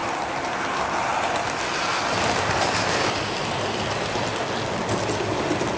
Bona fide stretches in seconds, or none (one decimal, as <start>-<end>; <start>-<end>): 0.6-5.8